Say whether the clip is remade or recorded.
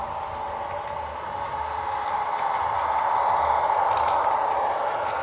recorded